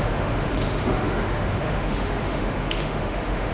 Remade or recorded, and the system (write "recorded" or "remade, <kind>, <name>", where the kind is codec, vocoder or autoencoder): remade, autoencoder, DAC-VAE